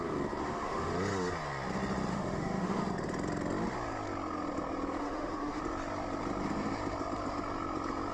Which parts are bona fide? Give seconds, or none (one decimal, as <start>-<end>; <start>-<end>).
0.0-0.4; 0.9-2.1; 2.8-5.0; 5.6-8.1

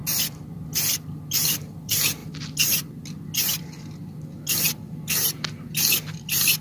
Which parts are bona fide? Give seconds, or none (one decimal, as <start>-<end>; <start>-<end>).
0.0-1.3; 2.2-6.6

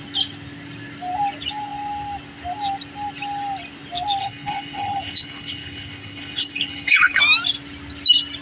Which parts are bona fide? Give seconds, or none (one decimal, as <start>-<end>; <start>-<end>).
0.0-4.2; 7.2-8.4

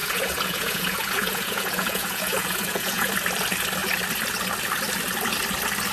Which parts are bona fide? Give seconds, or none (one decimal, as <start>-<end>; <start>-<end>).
3.1-5.9

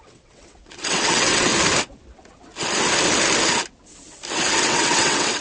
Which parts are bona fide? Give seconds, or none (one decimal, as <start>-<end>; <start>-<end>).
1.5-4.6

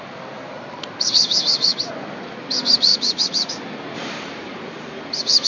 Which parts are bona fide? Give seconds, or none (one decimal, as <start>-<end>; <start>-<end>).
0.0-2.9; 3.5-5.5